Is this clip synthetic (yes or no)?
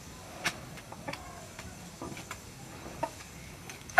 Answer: yes